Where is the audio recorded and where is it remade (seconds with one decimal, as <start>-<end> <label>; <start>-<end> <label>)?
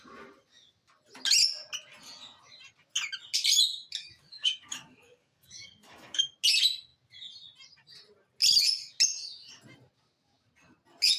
0.0-4.0 recorded; 4.0-6.3 remade; 6.3-11.2 recorded